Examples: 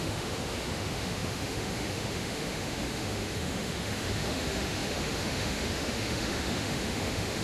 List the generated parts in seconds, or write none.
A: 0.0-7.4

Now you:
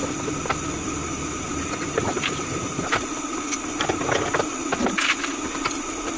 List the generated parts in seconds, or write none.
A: 1.0-2.8

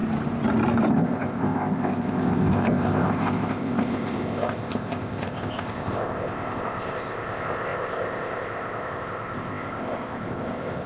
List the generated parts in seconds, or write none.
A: 0.9-10.9